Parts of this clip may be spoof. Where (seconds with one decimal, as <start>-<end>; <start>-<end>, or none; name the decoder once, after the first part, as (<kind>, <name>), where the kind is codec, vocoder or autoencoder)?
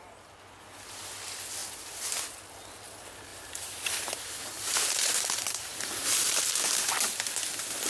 3.3-6.9 (vocoder, BigVGAN v2)